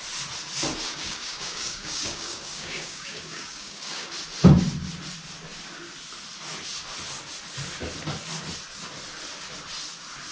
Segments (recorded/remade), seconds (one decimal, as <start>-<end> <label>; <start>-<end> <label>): 0.0-0.9 recorded; 0.9-4.1 remade; 4.1-10.3 recorded